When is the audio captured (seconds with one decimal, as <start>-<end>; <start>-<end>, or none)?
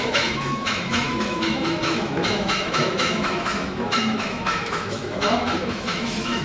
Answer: none